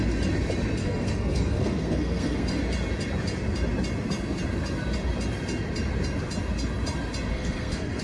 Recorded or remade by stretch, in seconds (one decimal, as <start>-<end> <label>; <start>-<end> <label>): 0.0-0.8 recorded; 0.8-2.6 remade; 2.6-7.3 recorded; 7.3-8.0 remade